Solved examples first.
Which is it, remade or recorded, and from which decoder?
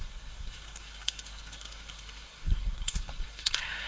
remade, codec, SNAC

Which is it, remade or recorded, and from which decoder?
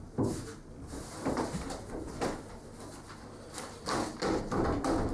recorded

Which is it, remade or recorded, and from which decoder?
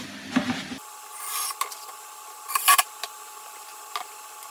recorded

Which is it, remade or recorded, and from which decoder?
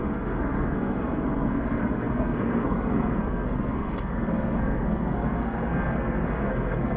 remade, codec, SNAC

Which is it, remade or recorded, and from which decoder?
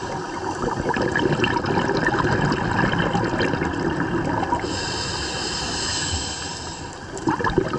recorded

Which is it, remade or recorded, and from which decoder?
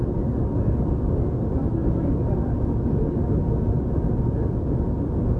recorded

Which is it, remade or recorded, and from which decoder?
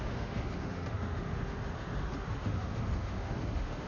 remade, autoencoder, DAC-VAE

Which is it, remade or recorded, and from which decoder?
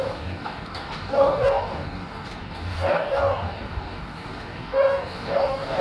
remade, codec, DAC